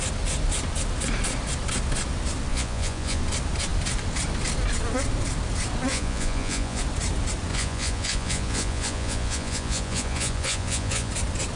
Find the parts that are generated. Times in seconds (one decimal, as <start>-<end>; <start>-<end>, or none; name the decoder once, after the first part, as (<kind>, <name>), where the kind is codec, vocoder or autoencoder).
2.5-3.2 (vocoder, Vocos); 5.9-6.8; 7.5-11.1